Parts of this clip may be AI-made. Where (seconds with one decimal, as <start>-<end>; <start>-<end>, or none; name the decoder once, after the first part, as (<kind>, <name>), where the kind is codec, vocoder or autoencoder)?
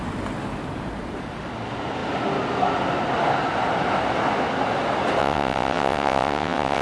5.2-6.8 (vocoder, WaveNeXt)